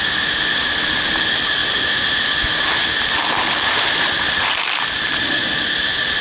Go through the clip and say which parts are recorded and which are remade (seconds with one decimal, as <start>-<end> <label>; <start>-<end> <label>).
0.0-6.2 recorded